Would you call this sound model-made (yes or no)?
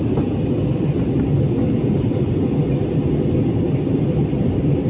no